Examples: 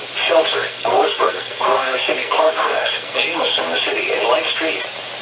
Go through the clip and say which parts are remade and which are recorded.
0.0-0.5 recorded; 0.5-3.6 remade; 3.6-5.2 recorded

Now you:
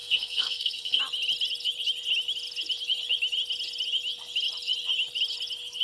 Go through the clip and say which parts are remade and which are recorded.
0.0-1.0 remade; 1.0-5.8 recorded

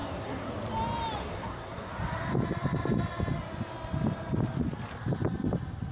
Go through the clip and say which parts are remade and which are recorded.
0.0-0.5 remade; 0.5-1.2 recorded; 1.2-1.9 remade; 1.9-5.9 recorded